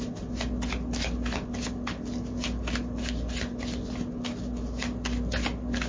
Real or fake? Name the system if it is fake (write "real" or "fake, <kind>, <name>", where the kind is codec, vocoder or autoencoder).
real